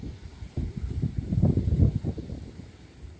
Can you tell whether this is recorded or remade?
recorded